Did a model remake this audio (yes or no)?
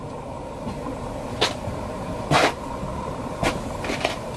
yes